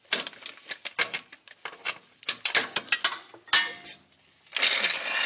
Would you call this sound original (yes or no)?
yes